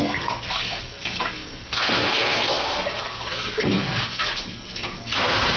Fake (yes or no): yes